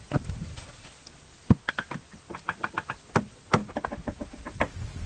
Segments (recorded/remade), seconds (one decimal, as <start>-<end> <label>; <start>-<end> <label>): 0.0-5.1 recorded